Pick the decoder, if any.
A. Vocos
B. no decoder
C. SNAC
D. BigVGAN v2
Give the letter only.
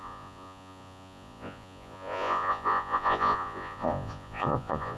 A